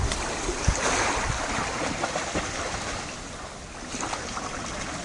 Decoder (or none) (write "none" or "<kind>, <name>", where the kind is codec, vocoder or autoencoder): none